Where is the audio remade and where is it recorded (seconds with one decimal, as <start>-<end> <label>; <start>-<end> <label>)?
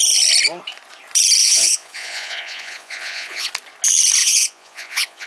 0.0-1.4 recorded; 1.4-3.5 remade; 3.5-4.2 recorded; 4.2-5.3 remade